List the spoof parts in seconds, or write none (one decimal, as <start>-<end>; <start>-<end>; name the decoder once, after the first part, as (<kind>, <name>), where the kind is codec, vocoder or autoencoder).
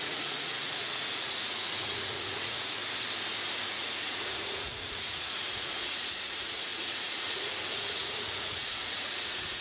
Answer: 0.0-2.8 (vocoder, Vocos); 3.7-9.6